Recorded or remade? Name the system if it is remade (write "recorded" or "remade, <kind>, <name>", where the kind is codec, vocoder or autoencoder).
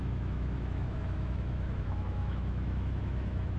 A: remade, autoencoder, DAC-VAE